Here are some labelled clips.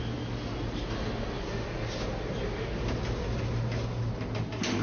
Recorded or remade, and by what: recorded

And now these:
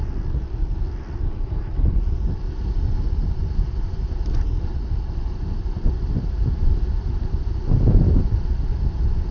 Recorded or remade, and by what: recorded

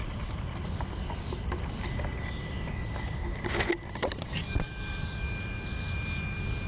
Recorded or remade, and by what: recorded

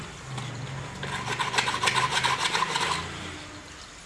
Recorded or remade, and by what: recorded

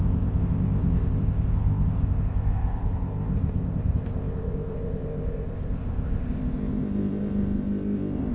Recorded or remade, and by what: remade, codec, ZipCodec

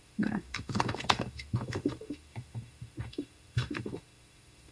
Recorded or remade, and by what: remade, autoencoder, DAC-VAE